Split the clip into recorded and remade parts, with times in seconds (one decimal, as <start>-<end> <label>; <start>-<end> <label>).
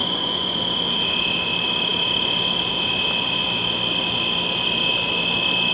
0.0-0.6 remade; 0.6-5.7 recorded